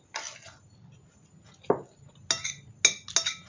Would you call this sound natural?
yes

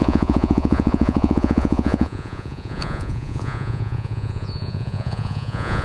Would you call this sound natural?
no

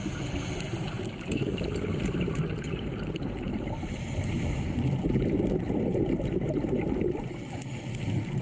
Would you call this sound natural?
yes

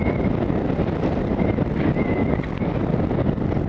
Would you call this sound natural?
yes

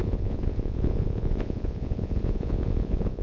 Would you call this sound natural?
no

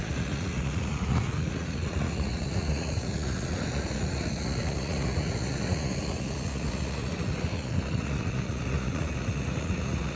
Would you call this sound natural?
no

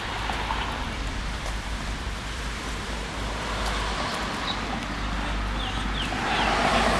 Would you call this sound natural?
yes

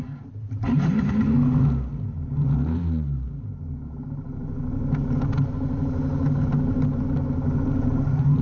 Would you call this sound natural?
yes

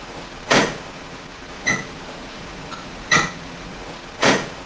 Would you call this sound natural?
no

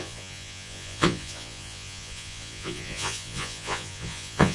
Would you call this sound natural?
no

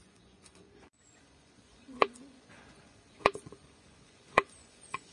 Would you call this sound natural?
no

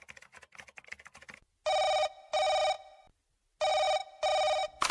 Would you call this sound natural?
yes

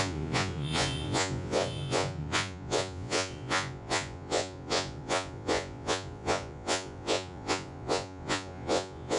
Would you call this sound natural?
no